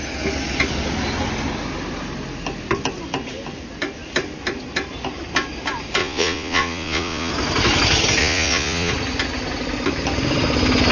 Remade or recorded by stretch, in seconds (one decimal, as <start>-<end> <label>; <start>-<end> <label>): 0.0-6.0 recorded; 6.0-7.3 remade; 7.3-8.2 recorded; 8.2-8.9 remade; 8.9-10.9 recorded